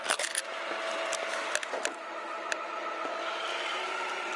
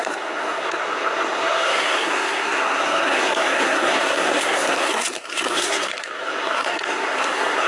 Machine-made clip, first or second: second